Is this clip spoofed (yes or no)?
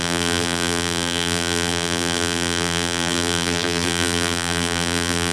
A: yes